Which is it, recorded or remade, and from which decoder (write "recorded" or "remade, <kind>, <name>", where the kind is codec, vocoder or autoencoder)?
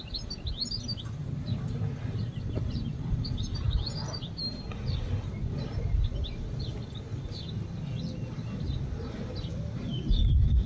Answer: recorded